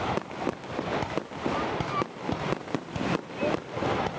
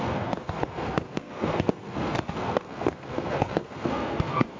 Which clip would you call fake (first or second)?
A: second